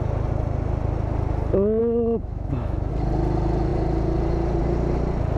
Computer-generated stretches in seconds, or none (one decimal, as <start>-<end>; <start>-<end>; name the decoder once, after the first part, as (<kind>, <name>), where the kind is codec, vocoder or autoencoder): 1.8-2.9 (autoencoder, DAC-VAE)